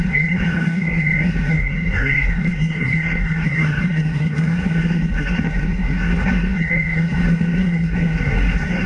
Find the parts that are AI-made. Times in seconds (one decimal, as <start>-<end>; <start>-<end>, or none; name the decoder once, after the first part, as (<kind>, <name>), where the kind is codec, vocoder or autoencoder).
0.0-8.9 (codec, SNAC)